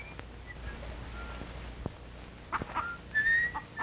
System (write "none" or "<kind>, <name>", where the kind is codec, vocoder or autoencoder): none